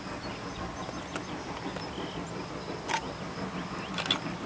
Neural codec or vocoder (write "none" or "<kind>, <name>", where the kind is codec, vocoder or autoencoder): none